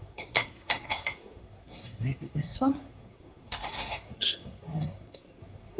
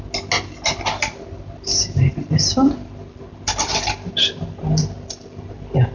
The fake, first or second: first